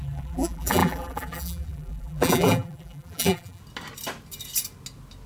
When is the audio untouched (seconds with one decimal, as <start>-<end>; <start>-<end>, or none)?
3.6-5.3